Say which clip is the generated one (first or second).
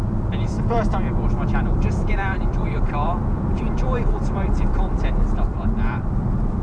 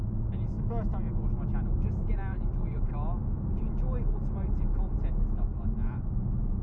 first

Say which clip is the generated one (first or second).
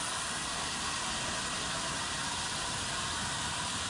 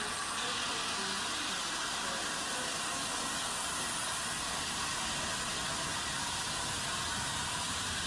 first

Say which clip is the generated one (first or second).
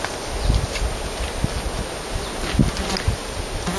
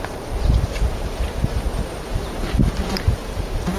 second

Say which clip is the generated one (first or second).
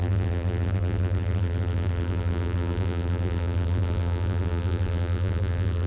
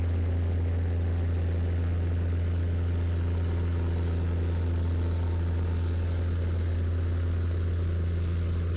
first